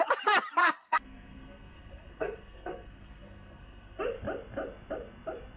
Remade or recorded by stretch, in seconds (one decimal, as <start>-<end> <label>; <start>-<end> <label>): 0.0-0.6 recorded; 0.6-4.0 remade; 4.0-5.6 recorded